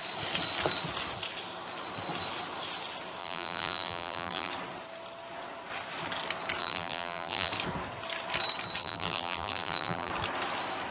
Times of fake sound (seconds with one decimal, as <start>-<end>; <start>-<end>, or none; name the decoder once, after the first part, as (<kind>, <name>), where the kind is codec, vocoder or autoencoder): 3.2-4.5 (vocoder, BigVGAN v2); 6.6-7.5; 8.8-10.1